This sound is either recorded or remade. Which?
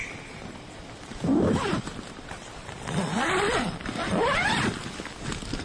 recorded